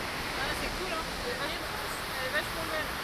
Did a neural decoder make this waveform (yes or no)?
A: no